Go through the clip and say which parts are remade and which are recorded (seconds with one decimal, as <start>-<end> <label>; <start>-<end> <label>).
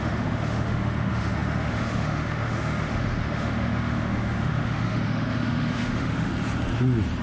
0.0-6.3 remade; 6.3-7.2 recorded